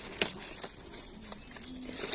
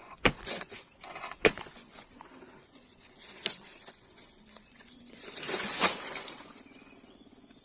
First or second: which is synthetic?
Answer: second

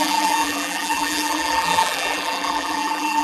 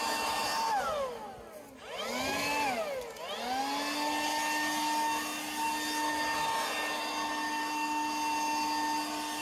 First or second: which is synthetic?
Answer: first